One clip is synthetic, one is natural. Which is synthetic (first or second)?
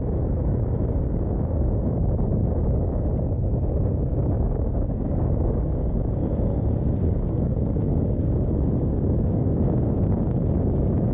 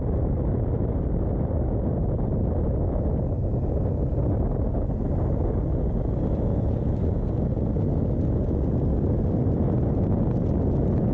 first